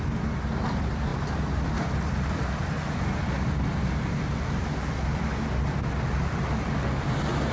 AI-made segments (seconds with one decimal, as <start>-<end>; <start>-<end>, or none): none

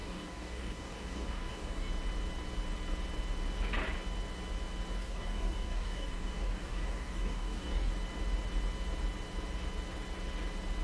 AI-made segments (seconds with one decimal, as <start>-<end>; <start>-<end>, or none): 0.0-1.9; 5.0-7.9

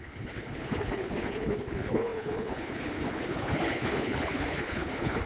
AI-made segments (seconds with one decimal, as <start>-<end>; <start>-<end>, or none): 0.0-5.3